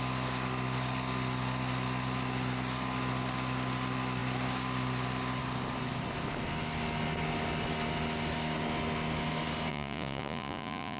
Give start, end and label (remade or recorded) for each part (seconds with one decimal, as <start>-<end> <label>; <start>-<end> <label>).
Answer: 0.0-9.7 recorded; 9.7-11.0 remade